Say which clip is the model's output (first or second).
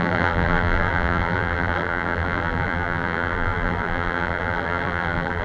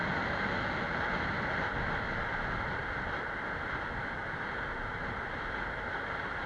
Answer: first